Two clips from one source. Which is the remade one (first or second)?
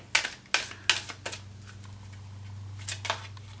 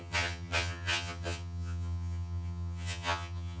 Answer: second